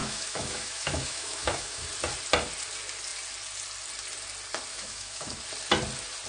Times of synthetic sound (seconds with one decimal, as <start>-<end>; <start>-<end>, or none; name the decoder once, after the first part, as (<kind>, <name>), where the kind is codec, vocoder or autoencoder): 0.0-1.9 (autoencoder, DAC-VAE); 4.7-5.4